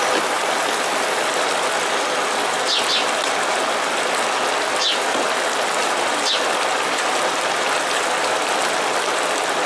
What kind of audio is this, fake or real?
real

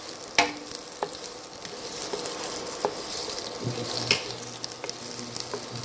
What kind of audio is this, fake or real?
real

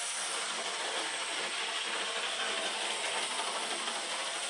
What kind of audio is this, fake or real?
real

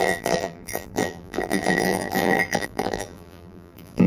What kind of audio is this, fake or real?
fake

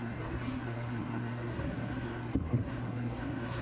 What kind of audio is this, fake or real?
fake